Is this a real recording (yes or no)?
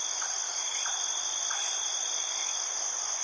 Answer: yes